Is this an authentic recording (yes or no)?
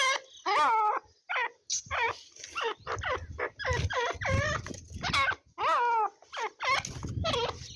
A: yes